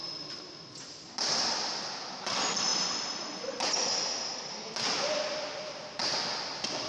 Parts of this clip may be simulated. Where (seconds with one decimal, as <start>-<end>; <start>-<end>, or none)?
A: none